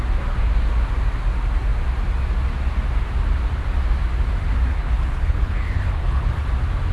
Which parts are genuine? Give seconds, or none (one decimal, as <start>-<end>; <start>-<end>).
0.0-4.7; 6.5-6.9